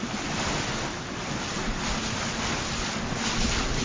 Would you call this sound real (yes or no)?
yes